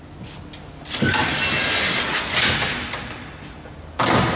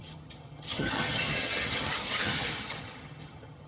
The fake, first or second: second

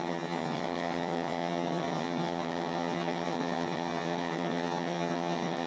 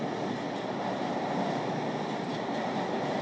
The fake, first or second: first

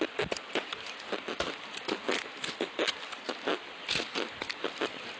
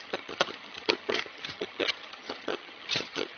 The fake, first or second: second